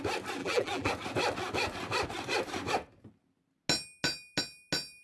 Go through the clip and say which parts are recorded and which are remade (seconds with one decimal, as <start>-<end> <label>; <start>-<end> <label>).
0.0-0.4 recorded; 0.4-0.9 remade; 0.9-5.0 recorded

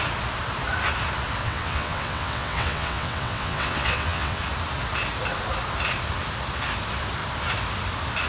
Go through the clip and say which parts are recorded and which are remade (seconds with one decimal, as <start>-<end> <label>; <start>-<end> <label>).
0.0-1.4 recorded; 1.4-4.4 remade; 4.4-8.3 recorded